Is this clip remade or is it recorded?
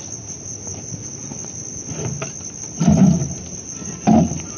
recorded